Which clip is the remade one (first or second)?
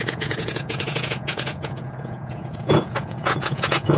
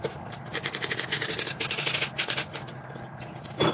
first